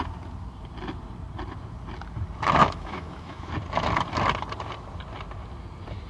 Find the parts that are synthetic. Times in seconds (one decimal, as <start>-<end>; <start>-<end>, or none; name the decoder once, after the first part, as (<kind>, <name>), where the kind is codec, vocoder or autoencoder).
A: 2.6-3.5 (autoencoder, DAC-VAE)